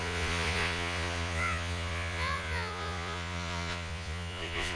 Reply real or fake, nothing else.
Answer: fake